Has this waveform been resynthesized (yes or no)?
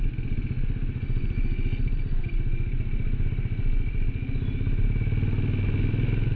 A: no